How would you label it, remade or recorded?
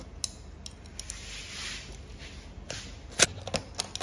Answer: recorded